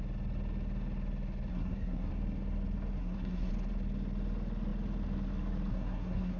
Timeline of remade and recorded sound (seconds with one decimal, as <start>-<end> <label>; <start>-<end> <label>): 0.0-1.5 recorded; 1.5-2.1 remade; 2.1-3.0 recorded; 3.0-3.5 remade; 3.5-5.7 recorded; 5.7-6.4 remade